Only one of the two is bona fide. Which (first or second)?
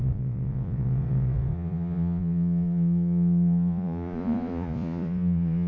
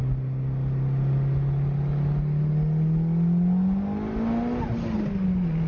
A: second